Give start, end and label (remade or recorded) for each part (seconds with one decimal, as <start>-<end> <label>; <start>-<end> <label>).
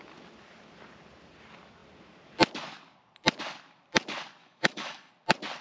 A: 0.0-4.4 recorded; 4.4-5.1 remade; 5.1-5.6 recorded